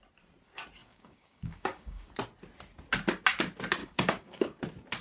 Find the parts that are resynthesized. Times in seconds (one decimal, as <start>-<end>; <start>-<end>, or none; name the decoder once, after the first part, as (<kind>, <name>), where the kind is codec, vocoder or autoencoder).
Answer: 0.8-2.1 (codec, DAC); 3.8-4.6

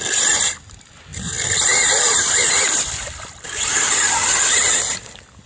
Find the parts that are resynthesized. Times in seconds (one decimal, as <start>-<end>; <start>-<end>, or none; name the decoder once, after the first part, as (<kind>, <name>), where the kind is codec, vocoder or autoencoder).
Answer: 0.0-5.5 (vocoder, BigVGAN v2)

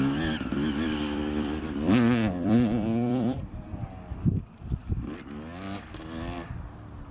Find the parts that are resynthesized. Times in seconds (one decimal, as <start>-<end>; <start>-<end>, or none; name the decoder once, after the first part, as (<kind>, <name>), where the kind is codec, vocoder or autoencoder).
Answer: 0.5-4.8 (vocoder, BigVGAN v2)

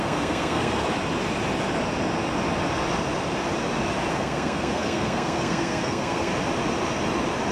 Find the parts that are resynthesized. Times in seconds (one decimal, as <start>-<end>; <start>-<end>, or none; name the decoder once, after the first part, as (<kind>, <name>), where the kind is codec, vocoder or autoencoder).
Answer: 0.0-0.9 (codec, SNAC); 4.1-6.3